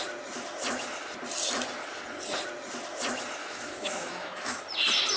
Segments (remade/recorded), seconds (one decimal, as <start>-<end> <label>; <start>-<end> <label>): 0.0-3.4 recorded; 3.4-4.6 remade; 4.6-5.2 recorded

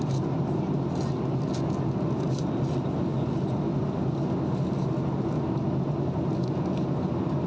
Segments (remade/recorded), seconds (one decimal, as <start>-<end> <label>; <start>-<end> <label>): 0.0-7.5 recorded